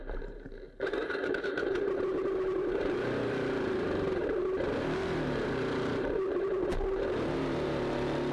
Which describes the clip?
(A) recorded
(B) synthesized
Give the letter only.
B